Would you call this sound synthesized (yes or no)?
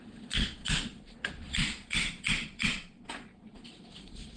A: yes